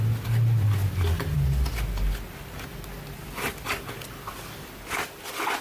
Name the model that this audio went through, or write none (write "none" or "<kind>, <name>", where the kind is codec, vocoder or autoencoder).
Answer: none